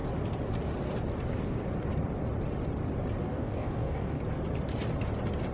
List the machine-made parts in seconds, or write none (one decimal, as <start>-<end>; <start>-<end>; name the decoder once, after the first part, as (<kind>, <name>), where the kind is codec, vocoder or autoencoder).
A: 3.2-4.2 (codec, DAC)